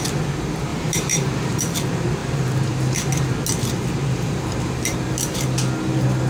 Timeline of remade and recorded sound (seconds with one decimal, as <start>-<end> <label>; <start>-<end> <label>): 0.0-0.7 recorded; 0.7-1.6 remade; 1.6-2.2 recorded; 2.2-3.3 remade; 3.3-4.0 recorded; 4.0-5.0 remade; 5.0-6.3 recorded